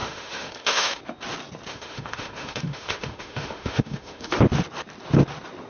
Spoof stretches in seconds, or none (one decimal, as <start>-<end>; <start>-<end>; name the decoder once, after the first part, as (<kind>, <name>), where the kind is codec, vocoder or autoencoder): 0.0-1.0 (autoencoder, DAC-VAE); 1.7-4.4